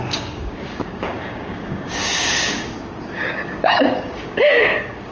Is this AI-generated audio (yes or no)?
yes